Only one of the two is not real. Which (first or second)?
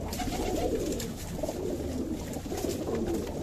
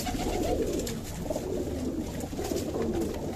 first